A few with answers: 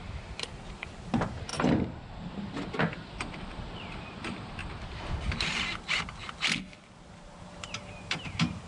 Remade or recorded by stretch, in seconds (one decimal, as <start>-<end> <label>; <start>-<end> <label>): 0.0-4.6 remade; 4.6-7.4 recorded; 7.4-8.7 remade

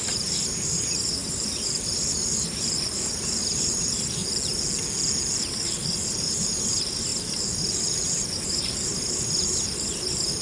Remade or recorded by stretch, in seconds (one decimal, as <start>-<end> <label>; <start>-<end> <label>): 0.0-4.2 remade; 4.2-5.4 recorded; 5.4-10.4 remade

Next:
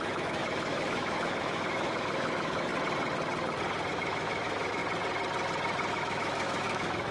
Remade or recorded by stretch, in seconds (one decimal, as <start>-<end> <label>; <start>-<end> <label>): 0.0-2.7 remade; 2.7-3.9 recorded; 3.9-4.8 remade; 4.8-5.9 recorded; 5.9-7.1 remade

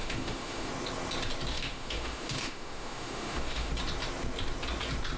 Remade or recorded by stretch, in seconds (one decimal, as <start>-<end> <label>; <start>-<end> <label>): 0.0-0.7 remade; 0.7-1.5 recorded; 1.5-3.7 remade; 3.7-5.2 recorded